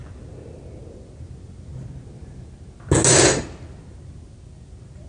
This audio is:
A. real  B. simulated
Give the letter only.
A